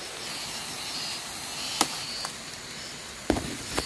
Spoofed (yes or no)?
no